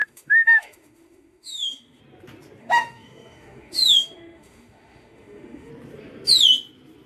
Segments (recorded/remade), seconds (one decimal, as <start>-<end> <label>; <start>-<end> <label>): 0.0-2.0 remade; 2.0-2.6 recorded; 2.6-5.7 remade; 5.7-7.1 recorded